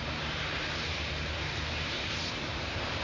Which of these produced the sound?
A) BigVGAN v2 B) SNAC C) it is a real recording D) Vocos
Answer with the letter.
A